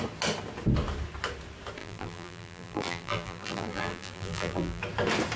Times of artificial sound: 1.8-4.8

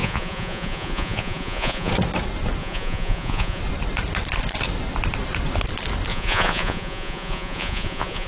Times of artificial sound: 0.0-1.9; 2.6-3.6; 6.1-8.3

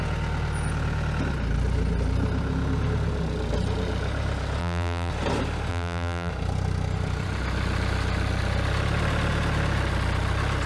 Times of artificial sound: 4.6-5.1; 5.7-6.3

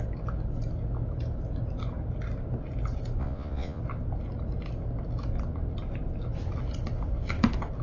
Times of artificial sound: 3.2-3.8

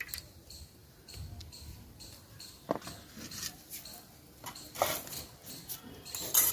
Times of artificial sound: none

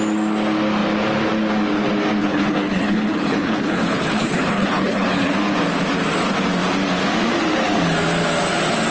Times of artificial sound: 2.2-5.3